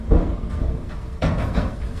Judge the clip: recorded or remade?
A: remade